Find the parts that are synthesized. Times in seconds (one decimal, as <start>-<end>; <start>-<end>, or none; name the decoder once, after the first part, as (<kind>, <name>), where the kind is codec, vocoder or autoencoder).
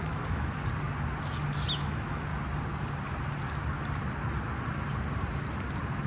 0.0-0.6 (autoencoder, DAC-VAE); 1.7-2.3